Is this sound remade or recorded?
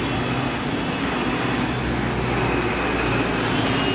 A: recorded